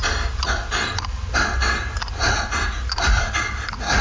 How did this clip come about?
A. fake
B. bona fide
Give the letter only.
B